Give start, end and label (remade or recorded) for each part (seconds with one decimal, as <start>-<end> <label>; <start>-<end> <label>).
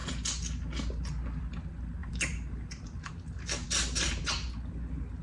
0.0-2.0 recorded; 2.0-3.1 remade; 3.1-3.6 recorded; 3.6-4.5 remade; 4.5-5.2 recorded